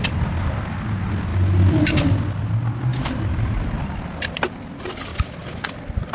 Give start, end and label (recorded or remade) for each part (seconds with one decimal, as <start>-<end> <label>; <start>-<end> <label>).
0.0-6.1 recorded